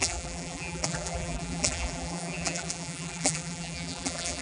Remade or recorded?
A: remade